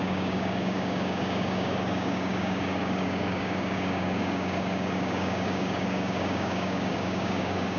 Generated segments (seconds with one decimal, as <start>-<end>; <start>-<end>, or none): 0.0-7.8